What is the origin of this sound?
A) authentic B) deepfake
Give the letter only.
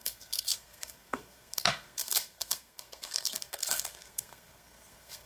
B